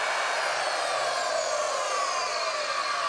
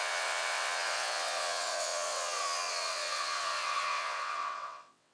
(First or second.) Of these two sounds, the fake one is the second